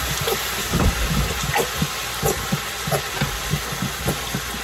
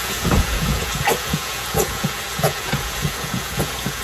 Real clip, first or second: first